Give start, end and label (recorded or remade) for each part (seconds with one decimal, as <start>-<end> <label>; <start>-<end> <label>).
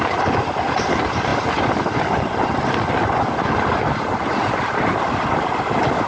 0.0-6.1 recorded